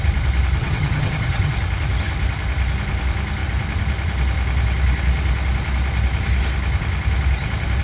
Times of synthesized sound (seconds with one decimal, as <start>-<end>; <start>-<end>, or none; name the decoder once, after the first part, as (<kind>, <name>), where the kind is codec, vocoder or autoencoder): 0.6-1.5 (vocoder, HiFi-GAN)